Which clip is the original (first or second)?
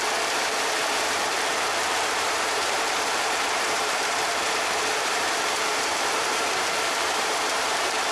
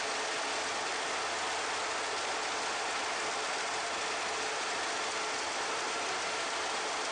second